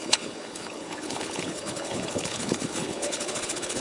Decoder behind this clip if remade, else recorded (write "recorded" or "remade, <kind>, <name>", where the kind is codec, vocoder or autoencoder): remade, codec, HILCodec